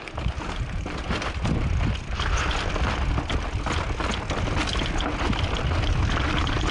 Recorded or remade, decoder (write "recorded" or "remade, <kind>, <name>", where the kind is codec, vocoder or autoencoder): recorded